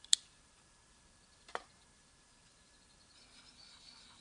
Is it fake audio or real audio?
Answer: fake